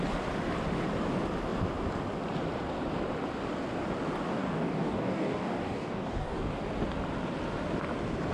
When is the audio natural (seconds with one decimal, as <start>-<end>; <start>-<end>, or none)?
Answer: 0.0-4.3; 6.6-8.3